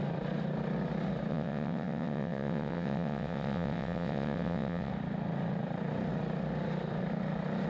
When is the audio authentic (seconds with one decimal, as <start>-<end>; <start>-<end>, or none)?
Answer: 0.0-1.3; 4.9-7.7